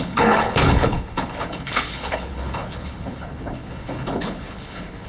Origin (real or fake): fake